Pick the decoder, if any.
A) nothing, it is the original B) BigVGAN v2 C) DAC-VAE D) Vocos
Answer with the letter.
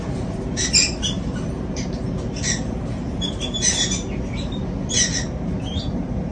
B